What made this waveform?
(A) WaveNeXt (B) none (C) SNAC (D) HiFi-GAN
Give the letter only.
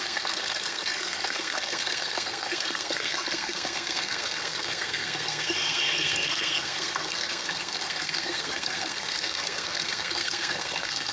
C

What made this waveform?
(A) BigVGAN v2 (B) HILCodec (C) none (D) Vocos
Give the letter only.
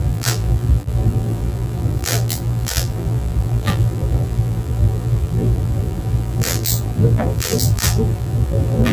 A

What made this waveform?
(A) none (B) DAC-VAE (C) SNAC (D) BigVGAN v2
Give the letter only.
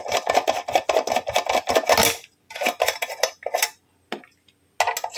A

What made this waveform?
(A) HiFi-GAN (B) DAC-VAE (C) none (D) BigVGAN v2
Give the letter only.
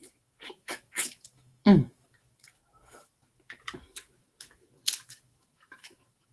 B